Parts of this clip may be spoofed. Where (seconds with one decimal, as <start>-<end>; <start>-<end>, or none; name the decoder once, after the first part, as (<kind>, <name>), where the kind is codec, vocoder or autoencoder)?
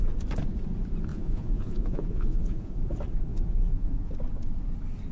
1.1-2.7 (vocoder, Vocos); 3.3-4.1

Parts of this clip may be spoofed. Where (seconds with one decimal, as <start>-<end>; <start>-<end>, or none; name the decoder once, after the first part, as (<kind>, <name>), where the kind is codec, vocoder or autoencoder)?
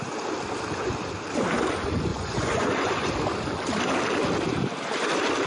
2.1-3.1 (vocoder, Vocos)